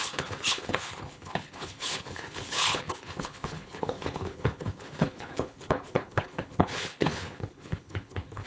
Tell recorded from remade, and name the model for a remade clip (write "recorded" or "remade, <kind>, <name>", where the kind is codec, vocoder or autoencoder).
remade, codec, HILCodec